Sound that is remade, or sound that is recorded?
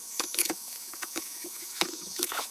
remade